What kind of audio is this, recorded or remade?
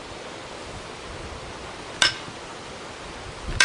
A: recorded